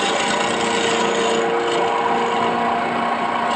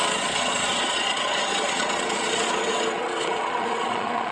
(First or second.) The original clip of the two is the first